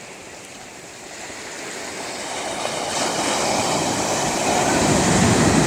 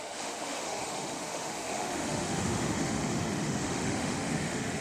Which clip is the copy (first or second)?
second